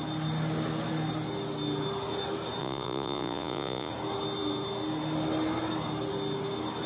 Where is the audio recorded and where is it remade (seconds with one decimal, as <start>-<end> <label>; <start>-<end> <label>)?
0.0-2.6 recorded; 2.6-3.9 remade; 3.9-6.9 recorded